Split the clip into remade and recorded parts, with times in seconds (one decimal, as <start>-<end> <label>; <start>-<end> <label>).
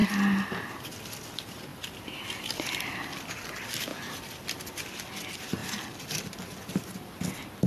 0.0-0.6 remade; 0.6-1.7 recorded; 1.7-2.9 remade; 2.9-7.7 recorded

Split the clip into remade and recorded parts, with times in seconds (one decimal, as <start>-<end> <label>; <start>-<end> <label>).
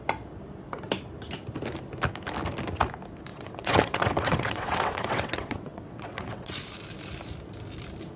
0.0-3.3 recorded; 3.3-6.6 remade; 6.6-8.2 recorded